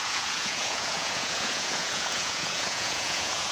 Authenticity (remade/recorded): remade